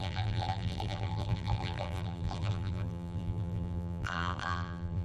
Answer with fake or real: fake